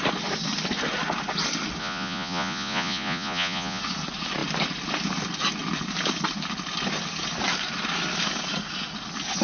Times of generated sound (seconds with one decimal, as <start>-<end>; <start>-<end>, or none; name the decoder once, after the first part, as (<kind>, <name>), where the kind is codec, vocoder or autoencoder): 1.8-3.8 (vocoder, Vocos)